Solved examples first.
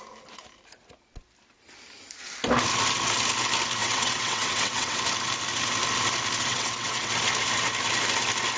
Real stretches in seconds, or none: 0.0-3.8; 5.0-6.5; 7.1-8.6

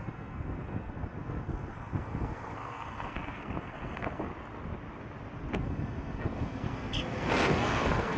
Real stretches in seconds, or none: 4.3-5.6

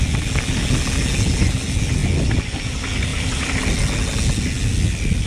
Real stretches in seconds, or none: 0.0-3.1; 3.6-5.3

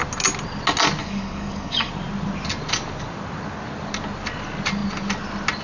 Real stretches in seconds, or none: 0.0-1.0; 1.9-5.6

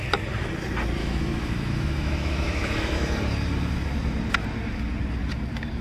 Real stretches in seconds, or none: 0.0-1.0; 3.2-5.8

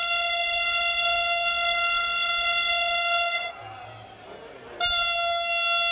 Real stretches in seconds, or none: 3.5-5.9